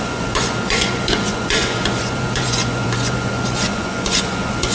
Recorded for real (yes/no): no